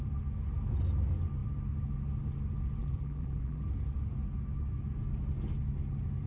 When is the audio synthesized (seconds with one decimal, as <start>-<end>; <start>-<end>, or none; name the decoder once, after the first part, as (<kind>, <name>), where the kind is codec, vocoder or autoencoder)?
2.8-3.6 (vocoder, BigVGAN v2)